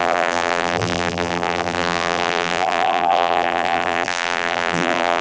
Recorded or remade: remade